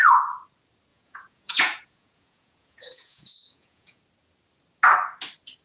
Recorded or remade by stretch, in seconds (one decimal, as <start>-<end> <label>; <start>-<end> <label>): 0.0-0.9 recorded; 0.9-4.0 remade; 4.0-5.6 recorded